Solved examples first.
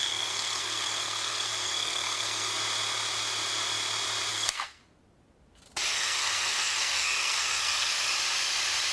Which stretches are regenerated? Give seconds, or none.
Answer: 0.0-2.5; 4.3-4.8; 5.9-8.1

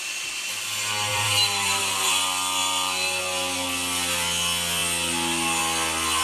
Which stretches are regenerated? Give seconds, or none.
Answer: 1.1-1.8; 2.6-3.2